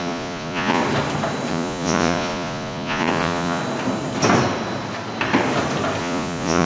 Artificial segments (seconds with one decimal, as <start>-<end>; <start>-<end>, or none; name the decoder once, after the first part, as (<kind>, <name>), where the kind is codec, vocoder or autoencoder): 0.0-0.8 (vocoder, Vocos); 1.5-3.6; 6.0-6.6